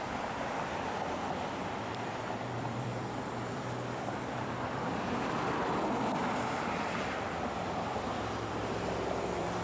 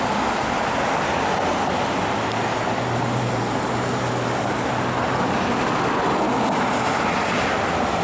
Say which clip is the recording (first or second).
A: second